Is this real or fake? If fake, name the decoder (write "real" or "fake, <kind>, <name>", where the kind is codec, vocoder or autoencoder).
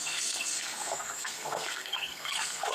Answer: fake, codec, SNAC